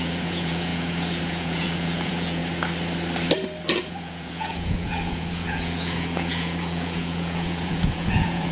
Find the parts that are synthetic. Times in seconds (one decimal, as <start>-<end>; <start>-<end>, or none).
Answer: 0.0-2.4; 3.8-8.5